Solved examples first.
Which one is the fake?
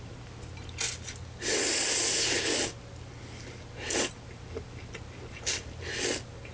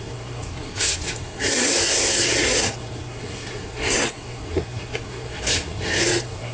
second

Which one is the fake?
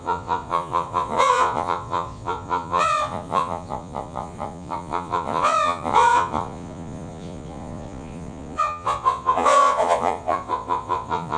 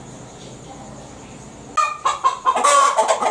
first